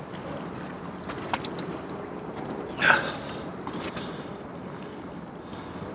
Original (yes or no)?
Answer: yes